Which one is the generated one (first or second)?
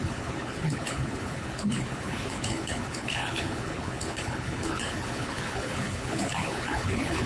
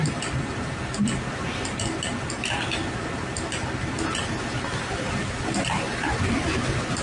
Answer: first